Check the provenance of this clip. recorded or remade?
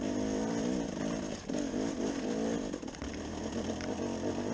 recorded